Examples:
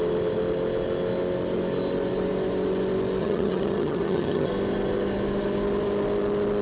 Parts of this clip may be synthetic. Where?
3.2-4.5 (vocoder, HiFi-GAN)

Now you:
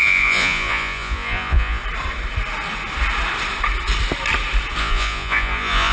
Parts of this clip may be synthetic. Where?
0.0-1.8 (vocoder, Vocos); 4.8-5.9